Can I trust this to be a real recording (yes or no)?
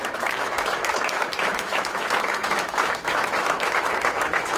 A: no